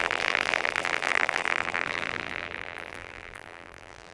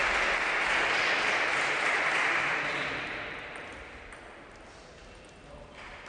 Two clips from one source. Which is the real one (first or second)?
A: second